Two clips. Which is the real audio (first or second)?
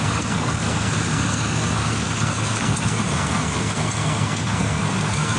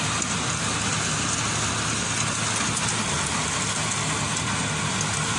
second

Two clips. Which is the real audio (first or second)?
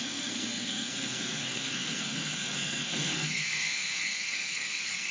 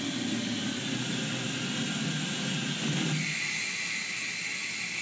second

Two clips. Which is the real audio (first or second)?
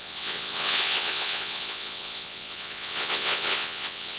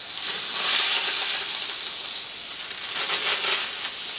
second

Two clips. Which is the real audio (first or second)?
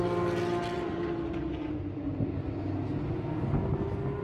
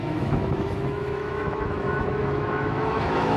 first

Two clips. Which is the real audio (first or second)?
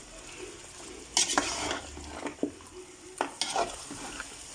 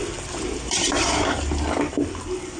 first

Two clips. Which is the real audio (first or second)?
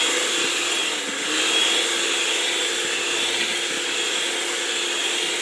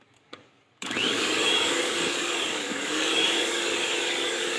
first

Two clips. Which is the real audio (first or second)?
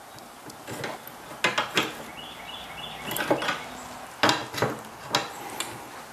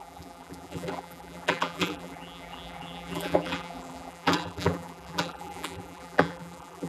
first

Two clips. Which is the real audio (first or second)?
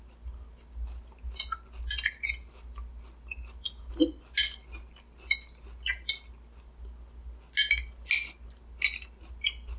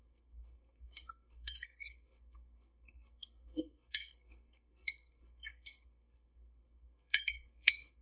first